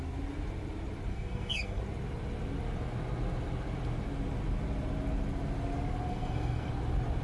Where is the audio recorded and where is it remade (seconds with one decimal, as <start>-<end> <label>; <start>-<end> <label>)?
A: 0.0-1.1 recorded; 1.1-1.8 remade; 1.8-6.1 recorded; 6.1-6.7 remade; 6.7-7.2 recorded